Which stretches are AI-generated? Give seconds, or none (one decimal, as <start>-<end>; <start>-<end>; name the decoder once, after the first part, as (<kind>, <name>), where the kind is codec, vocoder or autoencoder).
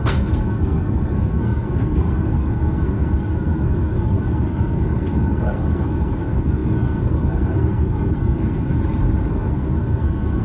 0.0-8.7 (codec, SNAC); 9.3-10.4